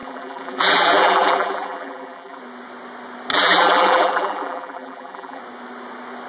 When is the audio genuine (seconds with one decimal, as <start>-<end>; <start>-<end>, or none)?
2.4-3.3; 5.4-6.3